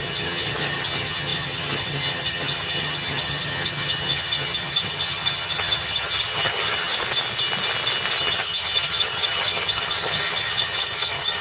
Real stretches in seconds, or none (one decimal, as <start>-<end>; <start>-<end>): 6.9-8.2